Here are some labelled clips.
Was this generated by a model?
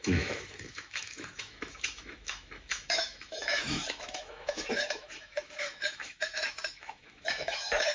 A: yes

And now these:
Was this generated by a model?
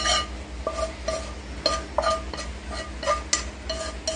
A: no